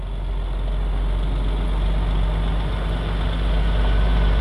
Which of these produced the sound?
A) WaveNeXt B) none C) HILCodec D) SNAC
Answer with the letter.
B